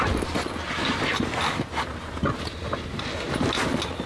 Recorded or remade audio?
recorded